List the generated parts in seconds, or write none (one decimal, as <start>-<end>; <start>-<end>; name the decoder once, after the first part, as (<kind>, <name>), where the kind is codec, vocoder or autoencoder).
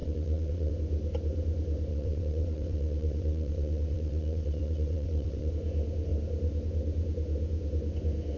0.0-0.7 (vocoder, WaveNeXt); 1.9-5.5